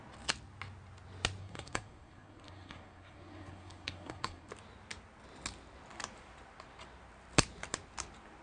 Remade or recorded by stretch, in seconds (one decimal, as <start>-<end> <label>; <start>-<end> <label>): 0.0-1.4 recorded; 1.4-4.5 remade; 4.5-8.4 recorded